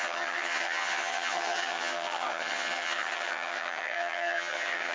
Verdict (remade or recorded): remade